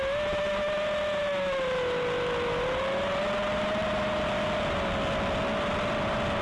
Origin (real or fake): real